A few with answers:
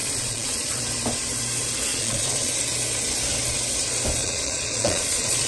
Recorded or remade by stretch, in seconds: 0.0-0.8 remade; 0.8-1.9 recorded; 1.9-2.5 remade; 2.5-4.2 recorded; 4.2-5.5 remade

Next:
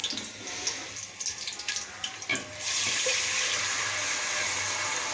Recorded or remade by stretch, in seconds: 0.0-5.1 recorded

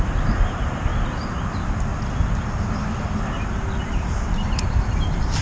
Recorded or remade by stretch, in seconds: 0.0-0.9 remade; 0.9-3.8 recorded; 3.8-5.4 remade

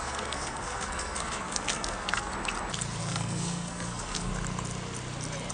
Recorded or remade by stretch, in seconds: 0.0-2.3 remade; 2.3-3.0 recorded; 3.0-4.3 remade; 4.3-5.5 recorded

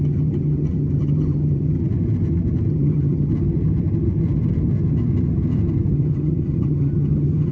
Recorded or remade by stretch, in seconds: 0.0-1.8 remade; 1.8-2.7 recorded; 2.7-3.3 remade; 3.3-5.9 recorded; 5.9-7.5 remade

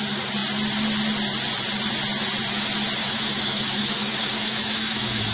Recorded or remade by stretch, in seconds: 0.0-3.0 recorded; 3.0-5.3 remade

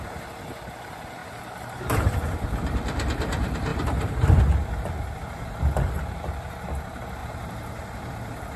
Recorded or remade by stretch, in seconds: 0.0-1.2 recorded; 1.2-2.3 remade; 2.3-3.7 recorded; 3.7-4.4 remade; 4.4-8.6 recorded